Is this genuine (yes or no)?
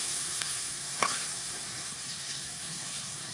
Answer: no